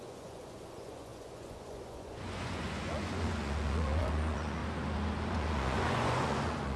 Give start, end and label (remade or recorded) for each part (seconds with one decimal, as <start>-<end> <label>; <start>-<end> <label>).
0.0-4.6 remade; 4.6-5.3 recorded; 5.3-6.8 remade